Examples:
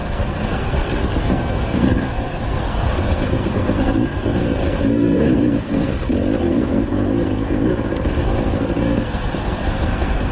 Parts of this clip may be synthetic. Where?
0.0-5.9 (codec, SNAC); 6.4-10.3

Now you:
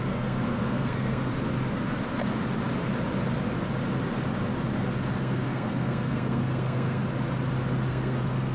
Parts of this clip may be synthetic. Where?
0.0-1.3 (codec, SNAC); 5.2-7.0; 7.9-8.5

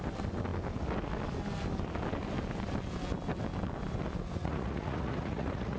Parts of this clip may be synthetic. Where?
4.4-5.8 (vocoder, Vocos)

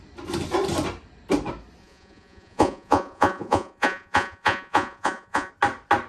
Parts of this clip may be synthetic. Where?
1.8-5.5 (vocoder, Vocos)

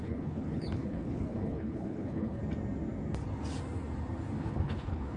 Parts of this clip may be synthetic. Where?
0.0-2.4 (codec, HILCodec); 4.4-5.2

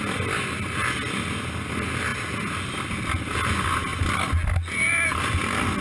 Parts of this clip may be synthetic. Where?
none

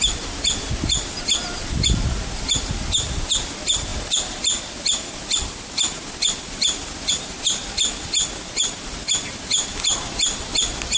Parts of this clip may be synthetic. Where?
none